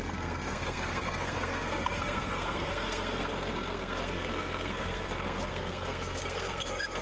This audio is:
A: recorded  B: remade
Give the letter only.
B